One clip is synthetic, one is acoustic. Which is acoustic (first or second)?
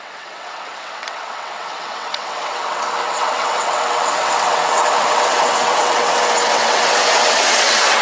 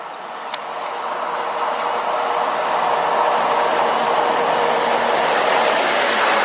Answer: second